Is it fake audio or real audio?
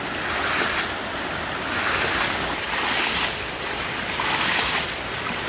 real